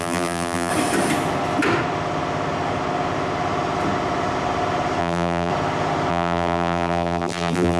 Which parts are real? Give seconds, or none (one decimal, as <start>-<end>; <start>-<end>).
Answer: 0.7-5.0; 5.5-6.1